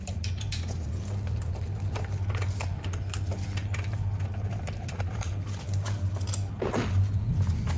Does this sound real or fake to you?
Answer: real